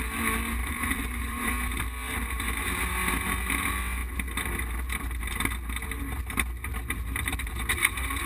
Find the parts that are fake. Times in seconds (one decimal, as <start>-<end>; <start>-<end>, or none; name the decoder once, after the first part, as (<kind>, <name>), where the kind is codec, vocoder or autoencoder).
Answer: 0.6-1.5 (vocoder, BigVGAN v2)